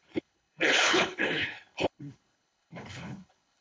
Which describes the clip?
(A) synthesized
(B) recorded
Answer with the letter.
A